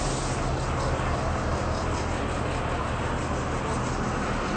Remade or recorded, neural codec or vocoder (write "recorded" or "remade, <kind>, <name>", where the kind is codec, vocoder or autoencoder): recorded